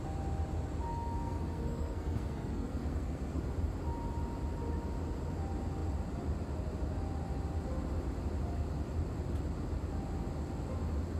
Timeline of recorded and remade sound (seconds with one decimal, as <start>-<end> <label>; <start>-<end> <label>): 0.0-0.9 recorded; 0.9-3.4 remade; 3.4-11.2 recorded